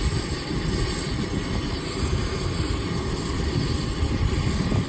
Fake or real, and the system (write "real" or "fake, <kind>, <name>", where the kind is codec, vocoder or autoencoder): real